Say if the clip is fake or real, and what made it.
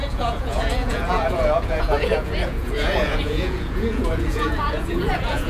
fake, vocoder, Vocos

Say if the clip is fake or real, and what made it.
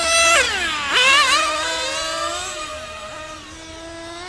real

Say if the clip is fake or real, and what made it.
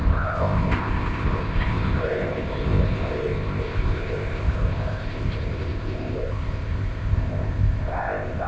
fake, codec, ZipCodec